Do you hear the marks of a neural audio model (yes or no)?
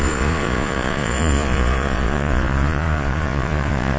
yes